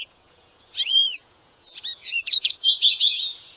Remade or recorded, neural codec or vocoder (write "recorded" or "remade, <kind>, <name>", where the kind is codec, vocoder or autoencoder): remade, vocoder, Vocos